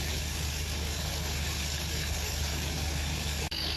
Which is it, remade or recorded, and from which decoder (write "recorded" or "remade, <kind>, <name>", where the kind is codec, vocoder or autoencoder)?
remade, codec, DAC